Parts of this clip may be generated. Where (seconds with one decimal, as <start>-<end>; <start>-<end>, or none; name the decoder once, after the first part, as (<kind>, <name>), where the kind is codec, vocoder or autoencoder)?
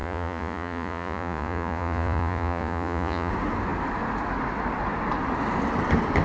0.0-3.3 (vocoder, Vocos)